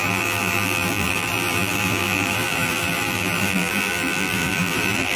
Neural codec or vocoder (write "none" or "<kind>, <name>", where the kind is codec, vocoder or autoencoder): vocoder, BigVGAN v2